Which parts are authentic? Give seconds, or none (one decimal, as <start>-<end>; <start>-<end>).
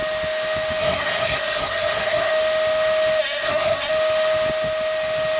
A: 0.0-0.8; 2.3-3.2; 3.9-5.4